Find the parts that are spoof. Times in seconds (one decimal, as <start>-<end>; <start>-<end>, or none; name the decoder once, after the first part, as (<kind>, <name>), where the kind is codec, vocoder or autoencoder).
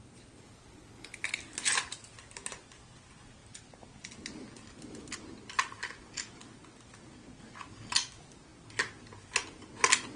none